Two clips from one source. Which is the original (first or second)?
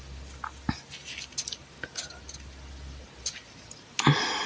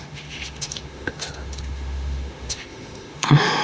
first